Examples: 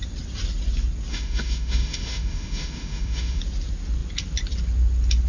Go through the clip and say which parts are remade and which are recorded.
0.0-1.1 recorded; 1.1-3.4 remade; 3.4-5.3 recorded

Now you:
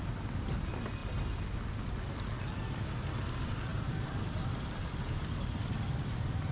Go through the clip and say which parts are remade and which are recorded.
0.0-3.7 recorded; 3.7-6.5 remade

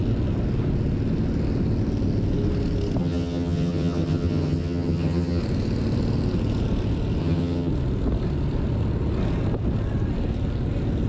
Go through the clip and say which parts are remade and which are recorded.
0.0-3.0 recorded; 3.0-5.4 remade; 5.4-7.2 recorded; 7.2-7.7 remade; 7.7-11.1 recorded

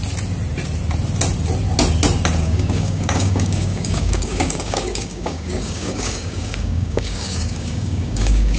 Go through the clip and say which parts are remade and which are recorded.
0.0-2.4 recorded; 2.4-8.6 remade